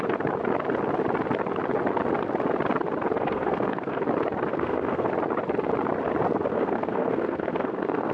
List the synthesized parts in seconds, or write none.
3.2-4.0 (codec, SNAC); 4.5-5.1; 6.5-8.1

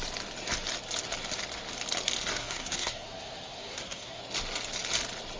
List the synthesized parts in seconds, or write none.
2.3-4.2 (codec, SNAC)